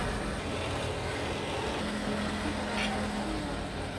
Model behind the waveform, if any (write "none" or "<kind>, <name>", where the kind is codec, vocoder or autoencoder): none